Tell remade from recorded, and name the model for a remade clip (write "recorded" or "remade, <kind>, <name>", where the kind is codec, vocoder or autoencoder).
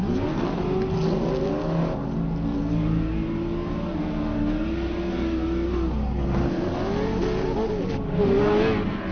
recorded